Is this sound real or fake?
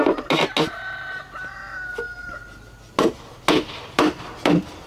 real